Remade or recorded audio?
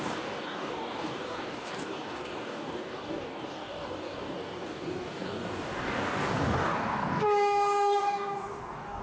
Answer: remade